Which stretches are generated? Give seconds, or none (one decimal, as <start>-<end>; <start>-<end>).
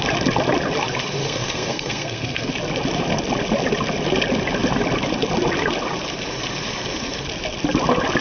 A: 1.2-2.5